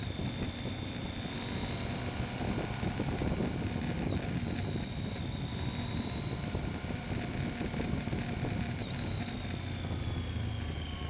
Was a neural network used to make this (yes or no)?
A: no